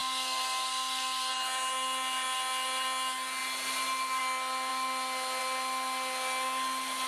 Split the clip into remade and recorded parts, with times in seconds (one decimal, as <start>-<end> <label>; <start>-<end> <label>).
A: 0.0-1.3 remade; 1.3-7.1 recorded

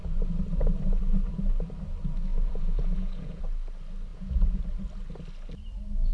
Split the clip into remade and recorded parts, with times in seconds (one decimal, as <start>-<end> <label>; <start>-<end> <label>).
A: 0.0-2.3 recorded; 2.3-3.4 remade; 3.4-4.1 recorded; 4.1-4.6 remade; 4.6-6.1 recorded

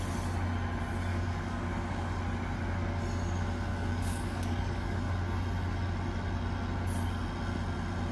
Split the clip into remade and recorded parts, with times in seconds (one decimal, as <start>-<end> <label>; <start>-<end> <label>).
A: 0.0-1.1 recorded; 1.1-2.2 remade; 2.2-3.7 recorded; 3.7-5.1 remade; 5.1-8.1 recorded

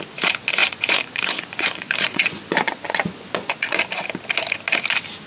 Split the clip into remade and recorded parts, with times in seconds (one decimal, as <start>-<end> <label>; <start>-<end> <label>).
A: 0.0-0.6 recorded; 0.6-3.8 remade; 3.8-5.3 recorded

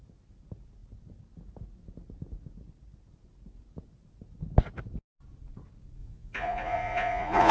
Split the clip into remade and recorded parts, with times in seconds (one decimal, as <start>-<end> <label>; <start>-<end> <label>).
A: 0.0-6.0 recorded; 6.0-7.5 remade

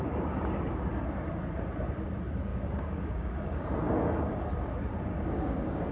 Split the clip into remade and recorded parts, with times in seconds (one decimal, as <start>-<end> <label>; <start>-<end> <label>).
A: 0.0-2.5 recorded; 2.5-3.6 remade; 3.6-5.1 recorded; 5.1-5.9 remade

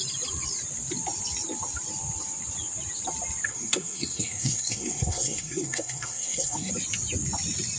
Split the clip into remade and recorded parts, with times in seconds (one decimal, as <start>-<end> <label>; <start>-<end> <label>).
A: 0.0-3.5 recorded; 3.5-6.7 remade; 6.7-7.8 recorded